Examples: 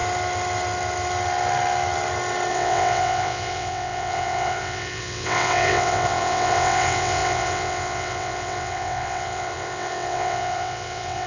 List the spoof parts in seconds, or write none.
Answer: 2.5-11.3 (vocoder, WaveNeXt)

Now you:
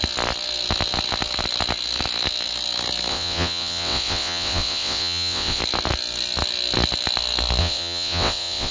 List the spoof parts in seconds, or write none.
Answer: 3.1-5.6 (vocoder, WaveNeXt); 7.6-8.7